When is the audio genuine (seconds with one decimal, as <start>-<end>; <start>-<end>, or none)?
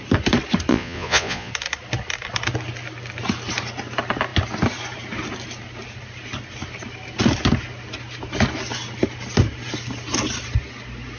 0.0-0.7; 1.5-11.2